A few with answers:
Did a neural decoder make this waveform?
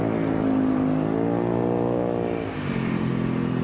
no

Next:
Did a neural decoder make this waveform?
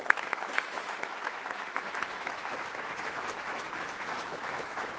yes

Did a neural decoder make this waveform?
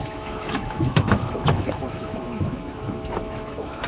yes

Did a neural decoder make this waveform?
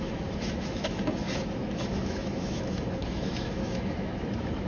yes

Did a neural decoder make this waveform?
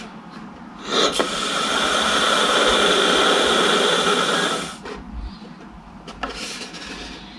no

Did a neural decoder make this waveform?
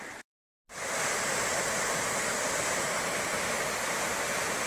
no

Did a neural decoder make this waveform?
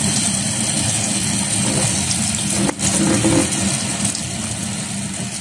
no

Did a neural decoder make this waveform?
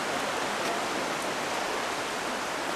no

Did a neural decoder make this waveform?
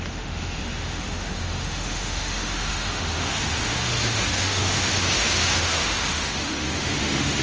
yes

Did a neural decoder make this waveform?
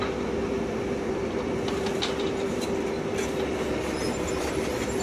no